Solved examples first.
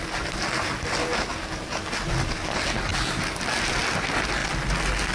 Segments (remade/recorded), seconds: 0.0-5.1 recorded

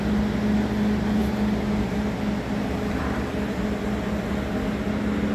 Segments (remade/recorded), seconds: 0.0-5.3 recorded

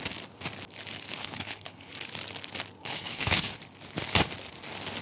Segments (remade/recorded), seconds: 0.0-1.2 recorded; 1.2-1.9 remade; 1.9-2.8 recorded; 2.8-3.5 remade; 3.5-5.0 recorded

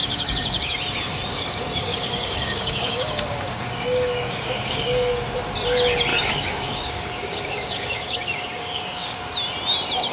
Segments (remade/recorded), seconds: 0.0-0.8 remade; 0.8-1.3 recorded; 1.3-5.1 remade; 5.1-6.1 recorded; 6.1-9.2 remade; 9.2-10.1 recorded

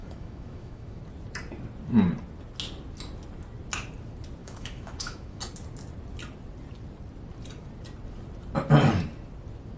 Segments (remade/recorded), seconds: 0.0-1.0 remade; 1.0-4.4 recorded; 4.4-5.4 remade; 5.4-9.8 recorded

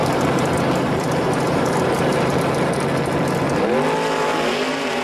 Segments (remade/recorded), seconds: 0.0-2.4 remade; 2.4-5.0 recorded

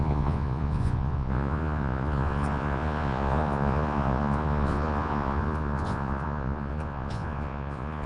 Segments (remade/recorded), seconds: 0.0-8.1 remade

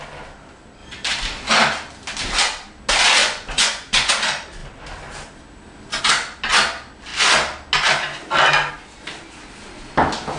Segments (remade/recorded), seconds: 0.0-3.2 recorded; 3.2-4.1 remade; 4.1-10.4 recorded